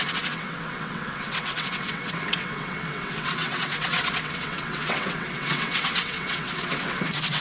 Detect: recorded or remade remade